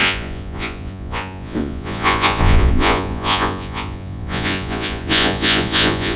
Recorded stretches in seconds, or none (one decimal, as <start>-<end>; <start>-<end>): none